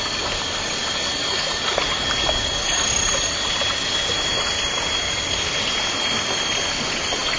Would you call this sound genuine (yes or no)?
yes